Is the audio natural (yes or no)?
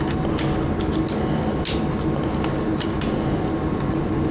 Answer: yes